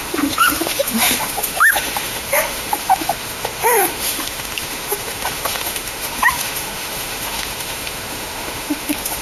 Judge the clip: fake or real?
fake